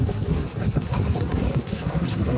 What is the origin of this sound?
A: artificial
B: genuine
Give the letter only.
A